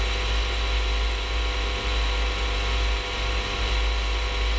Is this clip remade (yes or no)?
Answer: no